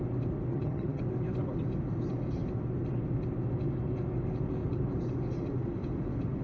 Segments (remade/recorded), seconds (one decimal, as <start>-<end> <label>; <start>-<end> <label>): 0.0-0.5 recorded; 0.5-1.0 remade; 1.0-6.4 recorded